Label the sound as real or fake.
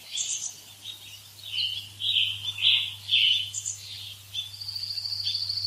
real